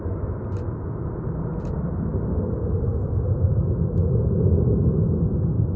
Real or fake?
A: real